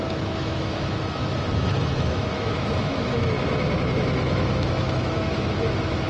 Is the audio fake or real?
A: fake